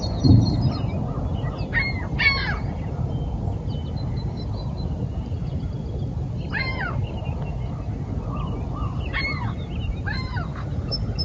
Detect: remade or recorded recorded